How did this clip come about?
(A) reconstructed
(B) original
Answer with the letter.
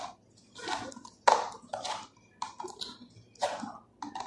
B